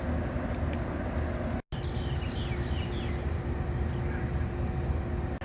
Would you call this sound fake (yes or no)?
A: no